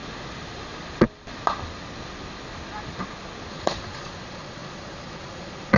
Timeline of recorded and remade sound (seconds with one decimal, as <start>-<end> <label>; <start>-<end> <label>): 0.0-3.5 recorded; 3.5-5.8 remade